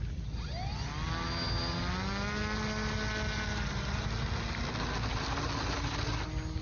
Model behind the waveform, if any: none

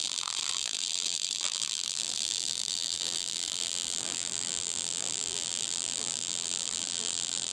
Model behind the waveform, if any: vocoder, BigVGAN v2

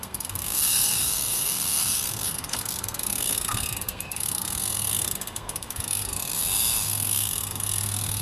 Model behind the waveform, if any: codec, SNAC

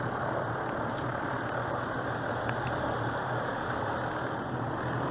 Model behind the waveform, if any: none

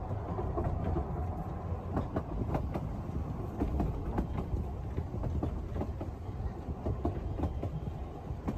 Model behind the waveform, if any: none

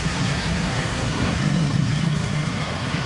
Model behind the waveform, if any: codec, SNAC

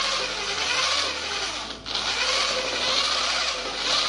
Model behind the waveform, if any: none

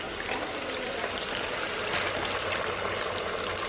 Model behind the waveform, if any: none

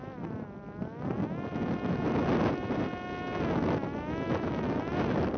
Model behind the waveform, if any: none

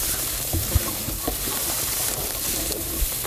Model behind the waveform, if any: vocoder, BigVGAN v2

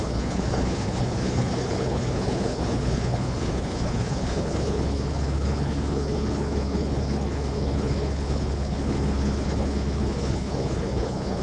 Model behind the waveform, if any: codec, HILCodec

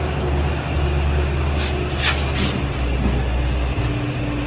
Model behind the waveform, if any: none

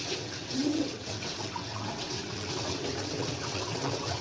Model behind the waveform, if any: vocoder, WaveNeXt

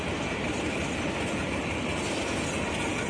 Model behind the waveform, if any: none